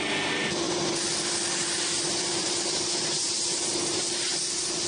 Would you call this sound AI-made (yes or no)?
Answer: yes